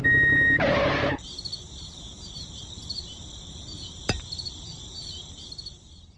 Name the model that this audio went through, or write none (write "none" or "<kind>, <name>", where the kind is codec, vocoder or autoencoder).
vocoder, BigVGAN v2